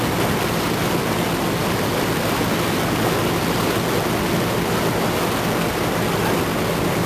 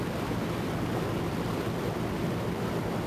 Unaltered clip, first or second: first